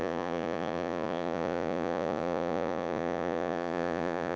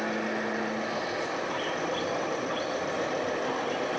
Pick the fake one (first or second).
first